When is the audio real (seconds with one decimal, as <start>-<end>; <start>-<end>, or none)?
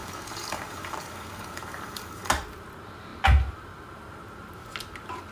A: 2.3-5.3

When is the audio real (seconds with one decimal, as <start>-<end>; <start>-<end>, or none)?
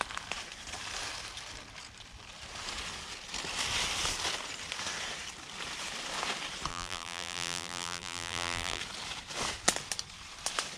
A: 0.0-6.7; 8.8-10.8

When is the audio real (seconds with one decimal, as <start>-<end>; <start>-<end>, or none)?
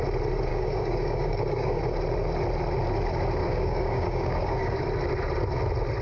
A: 0.0-0.5; 1.8-3.4; 4.8-6.0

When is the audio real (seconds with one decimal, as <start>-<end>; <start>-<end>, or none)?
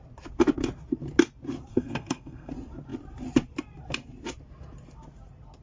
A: 0.0-1.7; 2.5-5.6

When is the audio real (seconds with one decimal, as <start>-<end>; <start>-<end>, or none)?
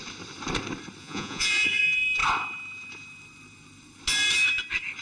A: 0.0-1.0; 1.8-5.0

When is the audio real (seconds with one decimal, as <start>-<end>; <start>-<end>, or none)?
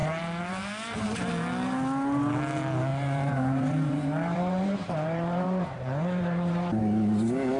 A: 1.3-2.9; 6.8-7.6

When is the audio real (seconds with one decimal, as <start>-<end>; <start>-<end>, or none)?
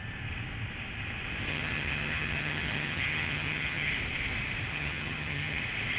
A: 0.0-1.5; 3.9-4.7; 5.6-6.0